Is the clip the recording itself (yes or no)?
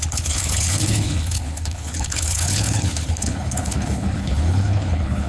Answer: no